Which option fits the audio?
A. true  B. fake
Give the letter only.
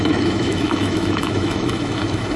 B